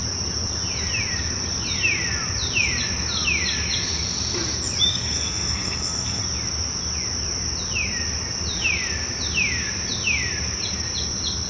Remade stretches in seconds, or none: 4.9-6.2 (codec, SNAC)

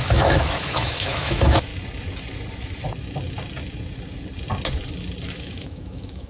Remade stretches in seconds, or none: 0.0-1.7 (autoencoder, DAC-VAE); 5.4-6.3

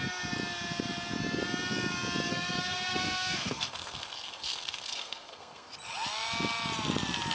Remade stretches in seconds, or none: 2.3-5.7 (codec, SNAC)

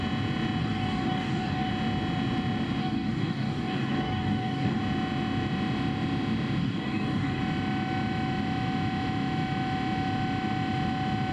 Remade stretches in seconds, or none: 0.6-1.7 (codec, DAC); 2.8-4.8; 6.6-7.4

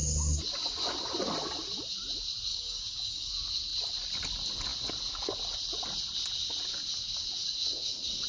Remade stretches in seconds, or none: 2.5-3.3 (codec, DAC)

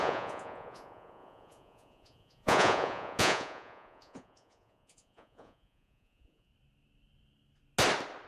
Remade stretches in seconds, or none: 0.0-6.5 (vocoder, Vocos)

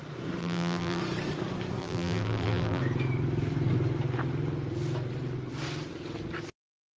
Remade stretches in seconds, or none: 0.4-1.0 (vocoder, BigVGAN v2); 1.8-2.8

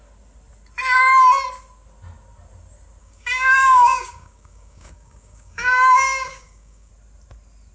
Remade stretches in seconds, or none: 3.0-6.9 (codec, DAC)